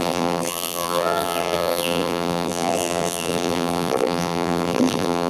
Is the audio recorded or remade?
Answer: remade